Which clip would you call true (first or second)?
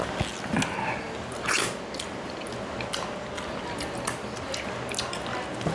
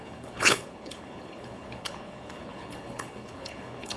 first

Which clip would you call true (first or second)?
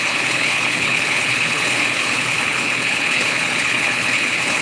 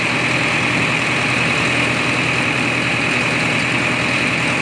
second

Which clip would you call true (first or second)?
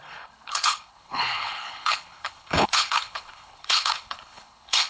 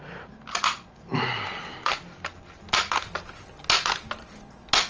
second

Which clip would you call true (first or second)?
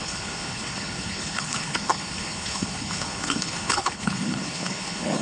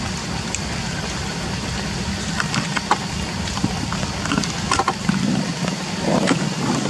second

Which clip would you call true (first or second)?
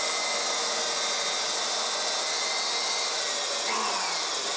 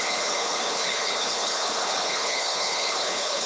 first